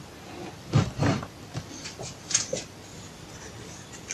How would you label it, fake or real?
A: real